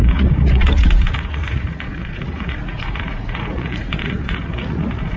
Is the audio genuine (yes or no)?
no